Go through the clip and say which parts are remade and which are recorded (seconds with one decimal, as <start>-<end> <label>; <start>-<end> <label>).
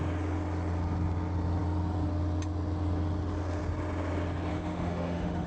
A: 0.0-4.5 recorded; 4.5-5.5 remade